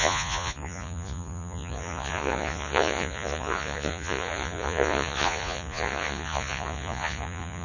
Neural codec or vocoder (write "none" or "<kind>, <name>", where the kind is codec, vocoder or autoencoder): vocoder, Vocos